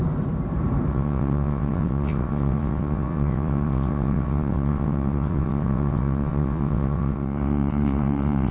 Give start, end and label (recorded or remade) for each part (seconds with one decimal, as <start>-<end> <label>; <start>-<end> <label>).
0.0-0.9 recorded; 0.9-8.5 remade